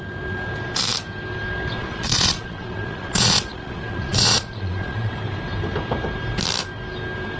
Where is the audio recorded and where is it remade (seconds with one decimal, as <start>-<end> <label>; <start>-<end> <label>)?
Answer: 0.0-1.8 recorded; 1.8-5.1 remade; 5.1-7.4 recorded